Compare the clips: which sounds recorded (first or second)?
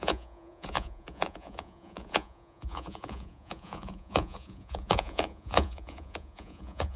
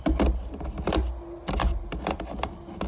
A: second